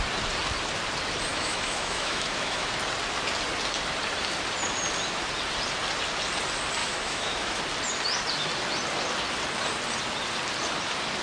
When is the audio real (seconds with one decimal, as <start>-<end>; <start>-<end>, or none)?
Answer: 0.0-1.3; 2.7-6.8; 7.6-11.2